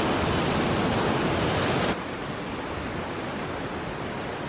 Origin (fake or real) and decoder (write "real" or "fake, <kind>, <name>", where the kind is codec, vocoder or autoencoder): real